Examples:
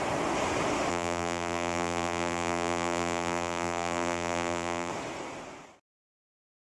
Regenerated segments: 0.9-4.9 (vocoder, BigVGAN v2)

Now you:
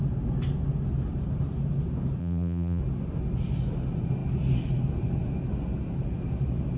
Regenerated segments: 2.2-2.8 (vocoder, BigVGAN v2)

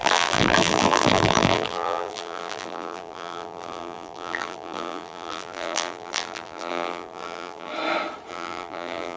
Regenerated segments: 0.0-7.7 (vocoder, BigVGAN v2); 8.3-9.2

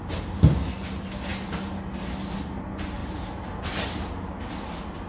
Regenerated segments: 3.0-4.5 (vocoder, BigVGAN v2)